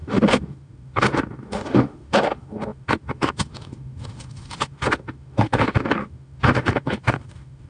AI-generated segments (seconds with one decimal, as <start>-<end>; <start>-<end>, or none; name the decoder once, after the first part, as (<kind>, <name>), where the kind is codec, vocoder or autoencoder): 0.0-7.7 (autoencoder, DAC-VAE)